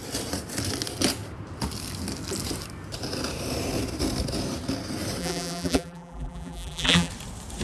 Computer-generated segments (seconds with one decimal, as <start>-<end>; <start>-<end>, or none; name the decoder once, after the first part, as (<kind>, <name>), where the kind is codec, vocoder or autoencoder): 5.2-7.1 (vocoder, BigVGAN v2)